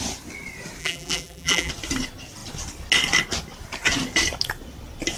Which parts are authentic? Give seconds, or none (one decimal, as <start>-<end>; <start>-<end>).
0.0-0.8; 1.7-5.2